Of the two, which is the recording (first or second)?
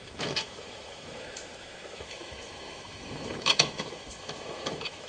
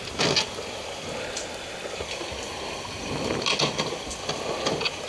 second